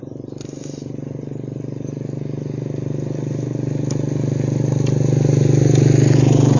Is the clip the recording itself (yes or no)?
yes